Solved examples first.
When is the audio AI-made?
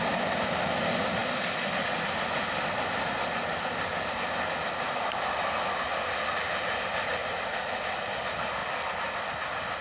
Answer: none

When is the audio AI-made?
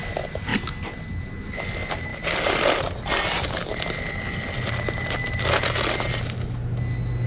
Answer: none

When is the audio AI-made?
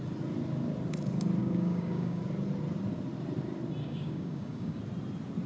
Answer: 1.4-2.2; 3.8-4.8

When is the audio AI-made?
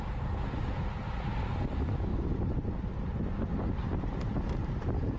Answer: none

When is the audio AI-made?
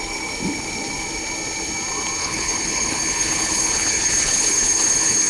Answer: 2.2-5.3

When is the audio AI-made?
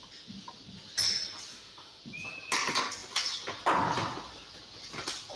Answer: 1.5-2.0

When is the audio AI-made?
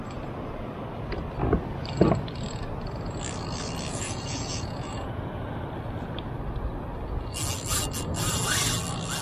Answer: 3.9-5.4